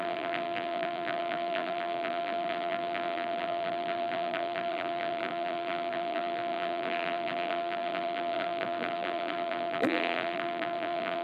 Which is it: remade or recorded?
remade